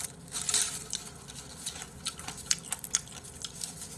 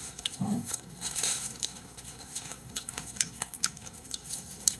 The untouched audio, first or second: first